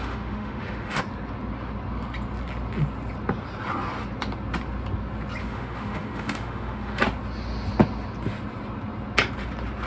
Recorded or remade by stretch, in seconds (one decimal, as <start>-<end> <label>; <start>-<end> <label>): 0.0-1.0 remade; 1.0-5.4 recorded; 5.4-7.0 remade; 7.0-9.9 recorded